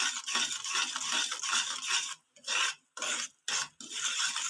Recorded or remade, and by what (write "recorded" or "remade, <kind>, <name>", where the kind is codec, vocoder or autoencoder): recorded